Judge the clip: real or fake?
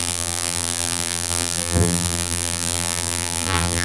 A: fake